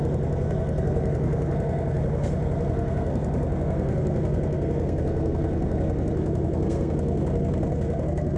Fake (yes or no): yes